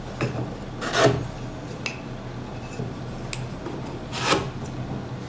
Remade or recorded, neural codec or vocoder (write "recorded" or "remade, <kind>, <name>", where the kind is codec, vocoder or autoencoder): recorded